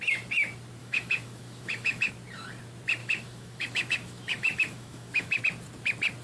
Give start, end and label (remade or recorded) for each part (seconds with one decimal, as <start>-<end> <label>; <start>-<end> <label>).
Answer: 0.0-0.8 recorded; 0.8-2.1 remade; 2.1-3.0 recorded; 3.0-5.4 remade; 5.4-6.2 recorded